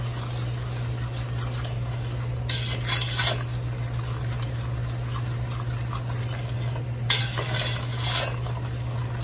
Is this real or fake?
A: real